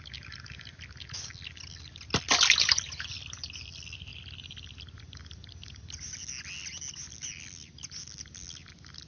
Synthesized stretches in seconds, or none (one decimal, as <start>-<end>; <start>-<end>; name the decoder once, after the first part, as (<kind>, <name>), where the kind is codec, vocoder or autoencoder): none